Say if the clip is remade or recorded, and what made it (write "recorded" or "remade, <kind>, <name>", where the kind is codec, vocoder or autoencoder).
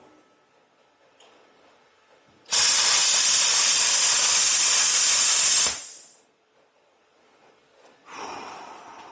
recorded